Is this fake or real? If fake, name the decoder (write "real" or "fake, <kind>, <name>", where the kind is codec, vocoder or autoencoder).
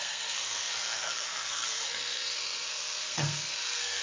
fake, codec, SNAC